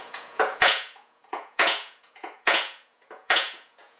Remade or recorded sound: remade